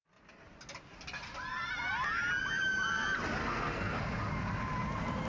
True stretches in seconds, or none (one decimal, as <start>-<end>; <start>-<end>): 0.0-3.4; 4.0-5.3